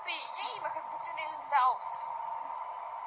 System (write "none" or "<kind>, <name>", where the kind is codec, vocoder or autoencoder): none